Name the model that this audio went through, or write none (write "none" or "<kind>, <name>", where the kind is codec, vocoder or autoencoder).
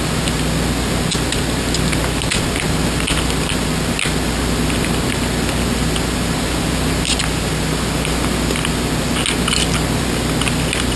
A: none